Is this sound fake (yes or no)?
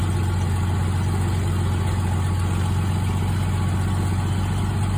no